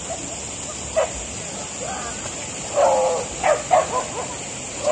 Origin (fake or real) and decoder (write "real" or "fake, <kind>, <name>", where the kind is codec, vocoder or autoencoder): real